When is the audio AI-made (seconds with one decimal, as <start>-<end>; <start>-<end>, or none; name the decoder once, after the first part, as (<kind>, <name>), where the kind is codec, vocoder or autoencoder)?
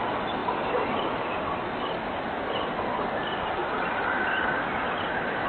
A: none